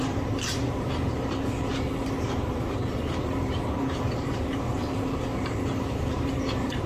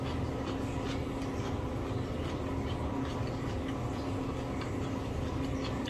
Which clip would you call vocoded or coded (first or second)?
first